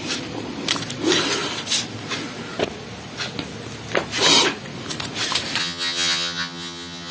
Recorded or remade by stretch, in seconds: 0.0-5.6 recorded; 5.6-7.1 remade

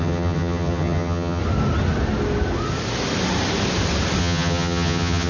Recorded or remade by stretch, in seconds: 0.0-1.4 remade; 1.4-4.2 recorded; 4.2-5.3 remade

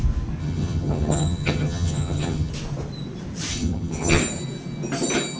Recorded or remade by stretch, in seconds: 0.0-0.4 recorded; 0.4-2.5 remade; 2.5-3.5 recorded; 3.5-4.2 remade; 4.2-5.4 recorded

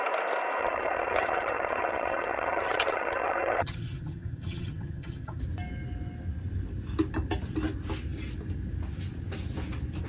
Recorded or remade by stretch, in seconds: 0.0-0.6 recorded; 0.6-5.4 remade; 5.4-10.1 recorded

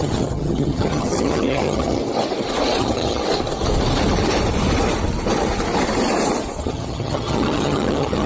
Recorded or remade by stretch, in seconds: 0.0-2.0 remade; 2.0-2.8 recorded; 2.8-3.2 remade; 3.2-6.6 recorded; 6.6-8.3 remade

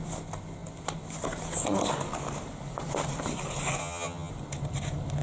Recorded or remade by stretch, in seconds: 0.0-3.8 recorded; 3.8-4.3 remade; 4.3-5.2 recorded